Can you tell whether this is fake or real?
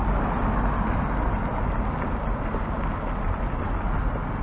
real